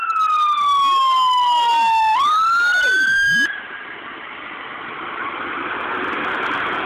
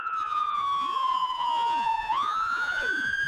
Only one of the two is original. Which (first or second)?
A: first